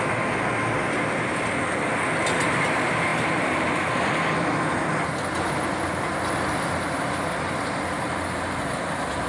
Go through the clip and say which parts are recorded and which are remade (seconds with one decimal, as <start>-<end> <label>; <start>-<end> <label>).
0.0-9.3 recorded